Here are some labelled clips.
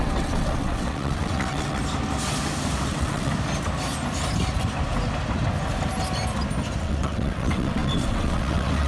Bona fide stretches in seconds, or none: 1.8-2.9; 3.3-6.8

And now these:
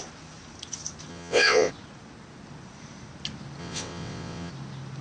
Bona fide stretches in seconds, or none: 0.0-1.1; 1.7-3.6; 4.5-5.0